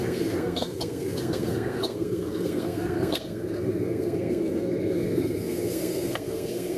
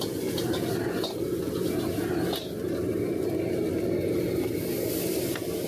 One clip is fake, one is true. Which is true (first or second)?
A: second